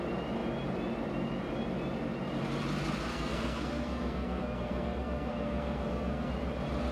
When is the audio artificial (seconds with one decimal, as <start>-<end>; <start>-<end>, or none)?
3.1-6.3